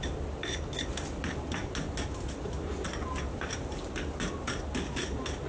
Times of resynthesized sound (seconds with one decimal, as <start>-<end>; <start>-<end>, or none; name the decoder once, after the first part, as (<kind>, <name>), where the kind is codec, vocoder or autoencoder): none